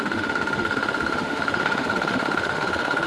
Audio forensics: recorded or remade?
remade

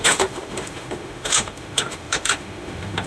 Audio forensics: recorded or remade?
remade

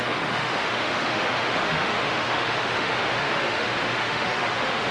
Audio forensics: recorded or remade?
remade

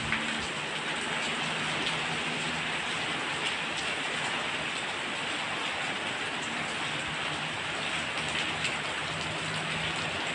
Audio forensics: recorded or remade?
recorded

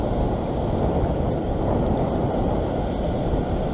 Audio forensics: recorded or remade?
recorded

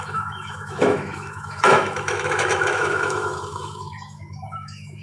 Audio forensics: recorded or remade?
remade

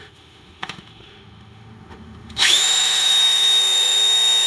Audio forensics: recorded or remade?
remade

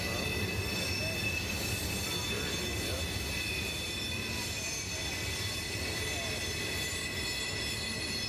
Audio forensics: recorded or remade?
recorded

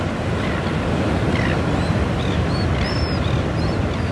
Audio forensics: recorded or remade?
recorded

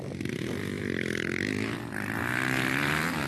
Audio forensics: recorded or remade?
recorded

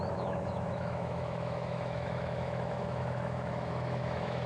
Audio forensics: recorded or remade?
remade